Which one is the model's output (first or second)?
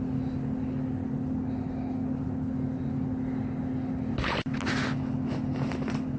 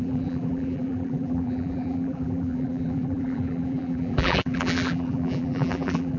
second